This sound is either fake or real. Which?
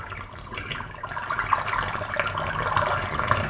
real